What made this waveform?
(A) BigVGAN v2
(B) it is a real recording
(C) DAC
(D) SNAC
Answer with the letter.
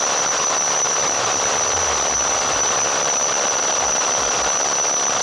A